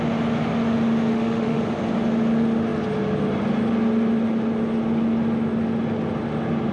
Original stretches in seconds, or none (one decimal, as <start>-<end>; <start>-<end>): 0.0-1.1; 1.6-6.7